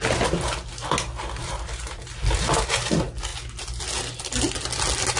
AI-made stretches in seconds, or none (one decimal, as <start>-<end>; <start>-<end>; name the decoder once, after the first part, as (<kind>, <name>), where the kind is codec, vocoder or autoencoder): 1.4-2.1 (vocoder, BigVGAN v2)